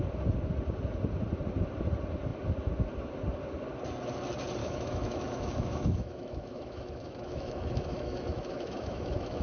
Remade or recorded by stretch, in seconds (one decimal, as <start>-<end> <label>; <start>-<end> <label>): 0.0-4.6 recorded; 4.6-9.4 remade